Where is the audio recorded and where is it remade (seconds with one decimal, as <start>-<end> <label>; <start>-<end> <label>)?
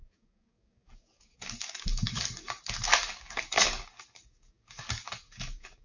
0.0-5.8 remade